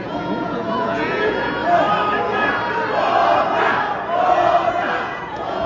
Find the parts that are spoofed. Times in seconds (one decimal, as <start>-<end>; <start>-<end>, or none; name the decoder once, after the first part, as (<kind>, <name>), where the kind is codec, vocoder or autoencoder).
0.0-1.6 (vocoder, Vocos); 5.0-5.7